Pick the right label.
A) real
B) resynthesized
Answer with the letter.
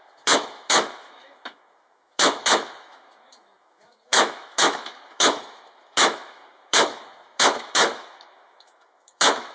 B